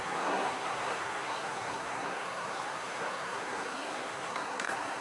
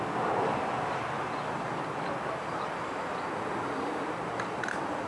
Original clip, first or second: second